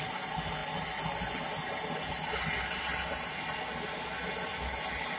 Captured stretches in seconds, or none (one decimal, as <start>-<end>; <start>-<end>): 0.0-5.2